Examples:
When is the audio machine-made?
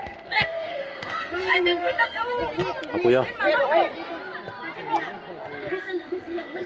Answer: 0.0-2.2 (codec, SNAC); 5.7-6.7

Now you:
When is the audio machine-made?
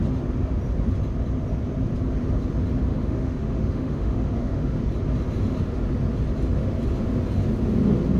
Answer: 2.9-4.8 (autoencoder, DAC-VAE)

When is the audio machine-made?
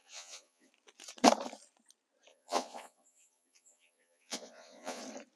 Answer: 0.0-0.7 (vocoder, Vocos); 2.3-5.0